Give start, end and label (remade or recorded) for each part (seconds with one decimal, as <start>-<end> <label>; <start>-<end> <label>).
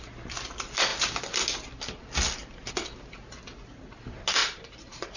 0.0-4.4 recorded; 4.4-5.2 remade